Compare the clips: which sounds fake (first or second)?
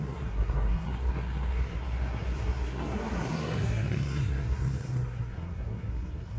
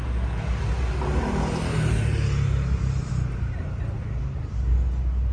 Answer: first